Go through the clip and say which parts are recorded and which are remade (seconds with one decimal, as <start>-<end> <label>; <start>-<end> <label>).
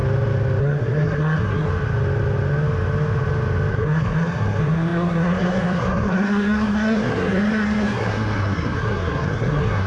0.0-0.6 recorded; 0.6-1.7 remade; 1.7-3.7 recorded; 3.7-9.9 remade